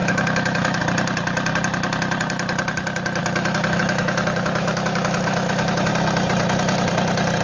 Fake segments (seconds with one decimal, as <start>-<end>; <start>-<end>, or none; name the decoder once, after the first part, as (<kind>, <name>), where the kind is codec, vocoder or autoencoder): 0.0-0.8 (autoencoder, DAC-VAE); 3.2-5.9